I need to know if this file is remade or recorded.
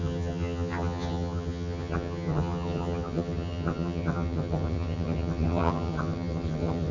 remade